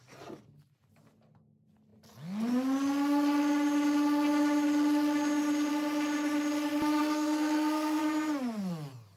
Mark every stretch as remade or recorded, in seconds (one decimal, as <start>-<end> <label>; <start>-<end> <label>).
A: 0.0-7.0 recorded; 7.0-8.0 remade; 8.0-9.2 recorded